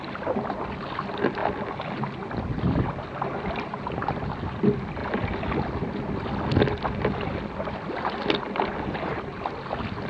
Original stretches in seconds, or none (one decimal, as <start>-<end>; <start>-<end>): 0.0-10.1